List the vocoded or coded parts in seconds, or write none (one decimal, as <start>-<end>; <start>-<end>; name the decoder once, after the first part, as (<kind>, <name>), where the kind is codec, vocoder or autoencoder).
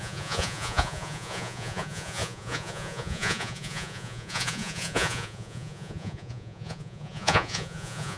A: 0.0-8.2 (vocoder, Vocos)